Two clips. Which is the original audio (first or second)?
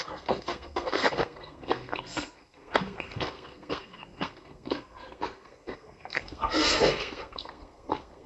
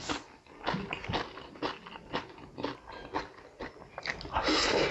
second